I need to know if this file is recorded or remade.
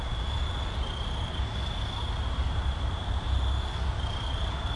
recorded